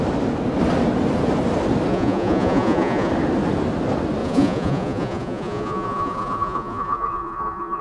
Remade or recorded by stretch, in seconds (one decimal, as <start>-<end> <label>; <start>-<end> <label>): 0.0-1.9 recorded; 1.9-3.1 remade; 3.1-4.2 recorded; 4.2-7.8 remade